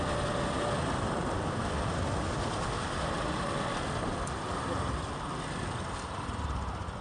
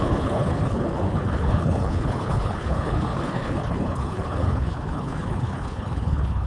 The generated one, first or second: second